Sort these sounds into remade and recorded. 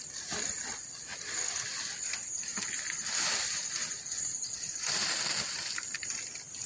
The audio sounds recorded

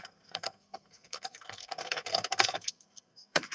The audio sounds remade